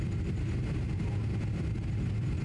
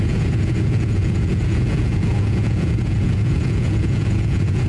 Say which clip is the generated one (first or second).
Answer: second